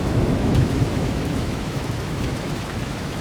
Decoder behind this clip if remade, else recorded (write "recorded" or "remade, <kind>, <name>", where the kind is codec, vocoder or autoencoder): remade, autoencoder, DAC-VAE